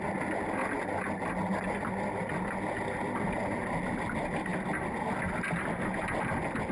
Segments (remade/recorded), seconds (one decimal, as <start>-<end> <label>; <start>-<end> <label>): 0.0-6.7 recorded